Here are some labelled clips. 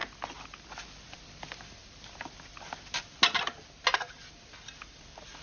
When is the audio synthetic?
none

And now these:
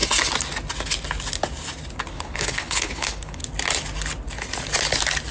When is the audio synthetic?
2.1-3.4 (codec, HILCodec)

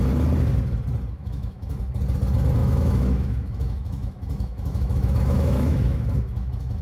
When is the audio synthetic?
1.2-1.8 (autoencoder, DAC-VAE); 2.6-6.8